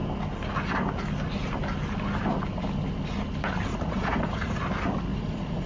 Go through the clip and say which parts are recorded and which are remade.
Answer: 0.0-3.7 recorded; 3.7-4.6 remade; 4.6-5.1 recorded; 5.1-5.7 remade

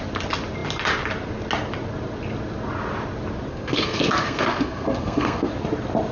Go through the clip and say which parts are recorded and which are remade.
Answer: 0.0-3.5 recorded; 3.5-5.5 remade; 5.5-6.1 recorded

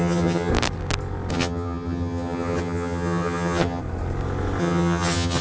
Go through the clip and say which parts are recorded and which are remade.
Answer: 0.0-0.5 remade; 0.5-1.3 recorded; 1.3-3.8 remade; 3.8-4.6 recorded; 4.6-5.4 remade

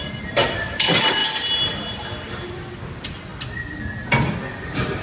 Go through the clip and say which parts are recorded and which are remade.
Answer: 0.0-5.0 recorded

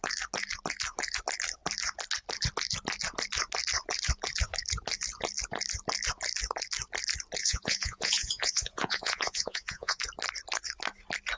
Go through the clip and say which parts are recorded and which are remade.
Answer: 0.0-7.4 recorded; 7.4-10.0 remade; 10.0-11.4 recorded